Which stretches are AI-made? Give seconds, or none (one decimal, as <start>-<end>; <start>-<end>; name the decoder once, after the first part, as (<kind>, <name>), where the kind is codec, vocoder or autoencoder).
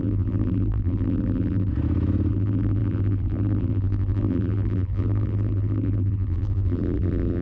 0.0-1.7 (vocoder, BigVGAN v2); 2.3-7.4